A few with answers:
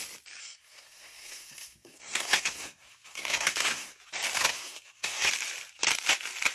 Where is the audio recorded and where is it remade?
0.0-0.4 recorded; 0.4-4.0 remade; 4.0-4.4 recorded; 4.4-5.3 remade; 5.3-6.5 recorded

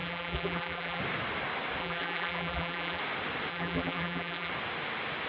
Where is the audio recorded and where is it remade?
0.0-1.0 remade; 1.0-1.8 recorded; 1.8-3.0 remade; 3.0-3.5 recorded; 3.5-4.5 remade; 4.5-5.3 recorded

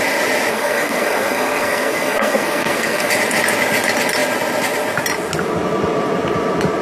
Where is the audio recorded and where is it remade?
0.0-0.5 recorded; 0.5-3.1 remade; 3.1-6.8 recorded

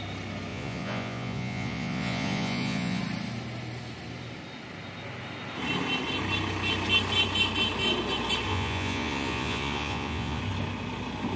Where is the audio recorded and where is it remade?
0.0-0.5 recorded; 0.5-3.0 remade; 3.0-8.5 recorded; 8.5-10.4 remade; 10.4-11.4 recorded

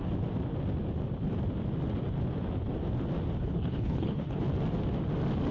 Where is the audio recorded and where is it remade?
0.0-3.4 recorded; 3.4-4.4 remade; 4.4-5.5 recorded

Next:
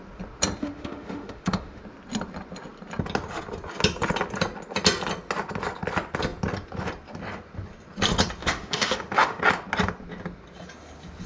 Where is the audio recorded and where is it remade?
0.0-0.6 recorded; 0.6-1.8 remade; 1.8-8.4 recorded; 8.4-9.4 remade; 9.4-11.3 recorded

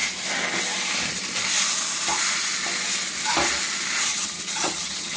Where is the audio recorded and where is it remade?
0.0-4.1 recorded; 4.1-5.2 remade

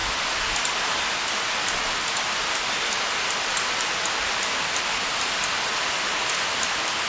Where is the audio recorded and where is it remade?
0.0-7.1 recorded